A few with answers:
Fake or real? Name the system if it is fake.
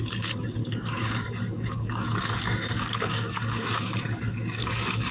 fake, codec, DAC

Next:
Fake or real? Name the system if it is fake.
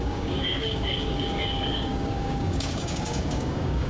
fake, codec, DAC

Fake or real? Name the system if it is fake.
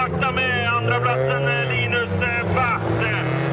real